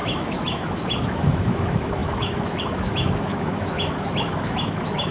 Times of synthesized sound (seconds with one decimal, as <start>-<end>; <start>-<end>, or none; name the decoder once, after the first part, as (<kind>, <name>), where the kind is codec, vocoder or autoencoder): 0.0-5.1 (autoencoder, DAC-VAE)